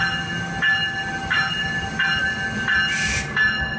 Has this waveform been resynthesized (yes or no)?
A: no